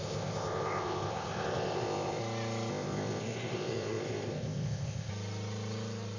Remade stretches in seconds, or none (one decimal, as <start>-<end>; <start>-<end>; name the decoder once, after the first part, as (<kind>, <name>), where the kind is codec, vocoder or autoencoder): 0.0-2.2 (codec, ZipCodec); 2.7-5.1